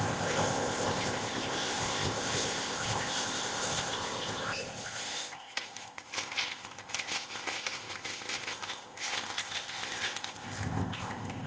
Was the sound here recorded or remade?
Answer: remade